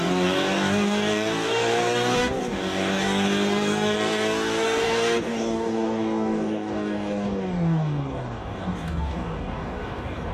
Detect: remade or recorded remade